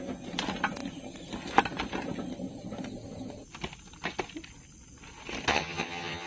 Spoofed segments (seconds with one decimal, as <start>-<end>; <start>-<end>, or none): 5.5-6.3